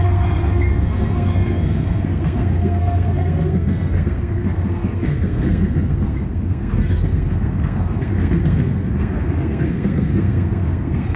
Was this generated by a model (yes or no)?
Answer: yes